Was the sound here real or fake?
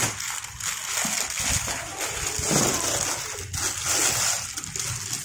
real